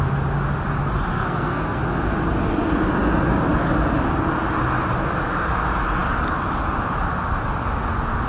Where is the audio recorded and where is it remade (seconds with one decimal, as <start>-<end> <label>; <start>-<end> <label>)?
0.0-1.1 recorded; 1.1-1.8 remade; 1.8-8.3 recorded